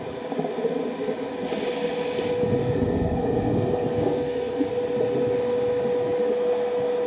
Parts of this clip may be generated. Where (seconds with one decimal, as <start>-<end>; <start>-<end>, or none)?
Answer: 2.6-4.7

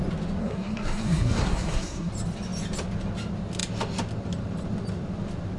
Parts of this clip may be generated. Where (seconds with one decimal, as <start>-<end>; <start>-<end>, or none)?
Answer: 0.4-2.1

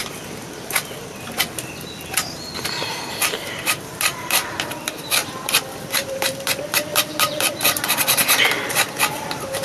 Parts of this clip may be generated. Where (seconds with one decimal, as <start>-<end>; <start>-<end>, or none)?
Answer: 2.8-9.6

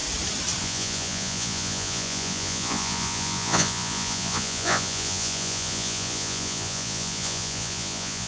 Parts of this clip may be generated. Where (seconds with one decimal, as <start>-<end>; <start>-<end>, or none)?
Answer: 0.6-8.3

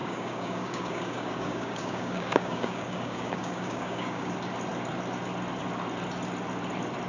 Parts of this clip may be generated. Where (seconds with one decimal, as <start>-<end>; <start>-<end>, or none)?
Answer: 0.0-4.3

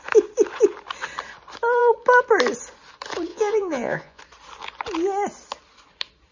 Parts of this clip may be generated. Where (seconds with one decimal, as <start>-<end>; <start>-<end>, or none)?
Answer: 3.3-4.2

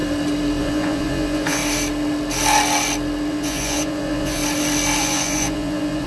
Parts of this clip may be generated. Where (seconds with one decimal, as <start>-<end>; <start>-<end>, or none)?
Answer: 0.6-1.6; 3.3-4.4; 5.0-6.1